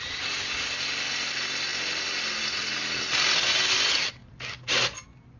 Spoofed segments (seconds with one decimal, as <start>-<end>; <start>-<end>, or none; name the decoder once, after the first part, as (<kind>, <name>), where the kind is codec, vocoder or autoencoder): none